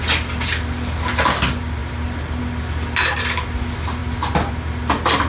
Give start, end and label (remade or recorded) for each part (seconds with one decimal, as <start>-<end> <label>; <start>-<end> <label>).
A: 0.0-5.3 recorded